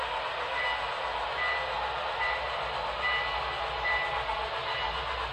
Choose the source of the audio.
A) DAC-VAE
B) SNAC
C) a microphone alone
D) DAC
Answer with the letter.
C